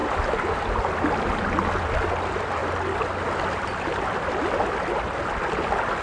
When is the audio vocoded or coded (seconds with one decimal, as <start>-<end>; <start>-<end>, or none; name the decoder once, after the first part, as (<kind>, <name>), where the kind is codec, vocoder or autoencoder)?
none